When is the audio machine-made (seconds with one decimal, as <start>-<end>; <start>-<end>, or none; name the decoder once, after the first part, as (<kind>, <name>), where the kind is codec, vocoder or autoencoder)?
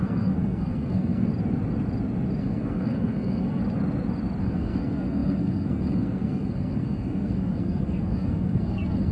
0.0-1.3 (codec, SNAC); 2.4-3.6; 4.4-9.1